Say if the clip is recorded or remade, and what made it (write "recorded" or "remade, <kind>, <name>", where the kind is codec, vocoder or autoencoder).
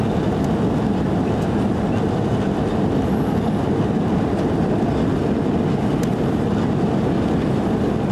recorded